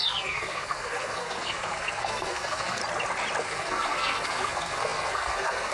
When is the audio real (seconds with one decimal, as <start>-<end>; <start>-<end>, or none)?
2.8-3.4